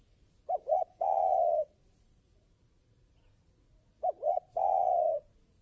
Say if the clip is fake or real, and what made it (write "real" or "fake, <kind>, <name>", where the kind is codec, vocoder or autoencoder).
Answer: fake, vocoder, Vocos